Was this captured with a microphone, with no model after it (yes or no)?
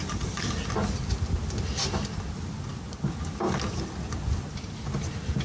yes